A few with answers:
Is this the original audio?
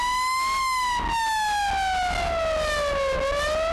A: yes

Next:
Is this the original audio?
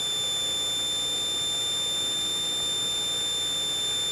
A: yes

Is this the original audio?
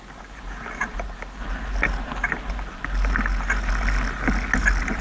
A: yes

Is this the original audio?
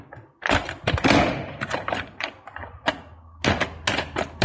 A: yes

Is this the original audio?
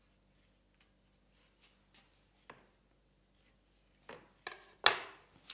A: yes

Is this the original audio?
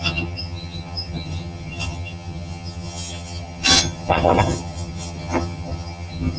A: no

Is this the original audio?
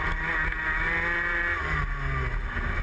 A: yes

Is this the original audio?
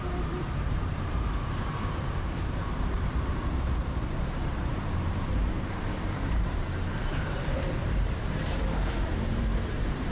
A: no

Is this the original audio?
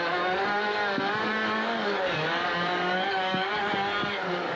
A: no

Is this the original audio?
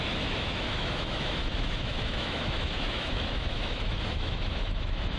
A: no